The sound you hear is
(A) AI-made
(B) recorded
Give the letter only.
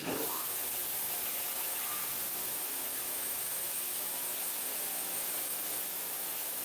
A